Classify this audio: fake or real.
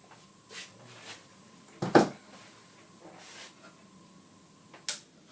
real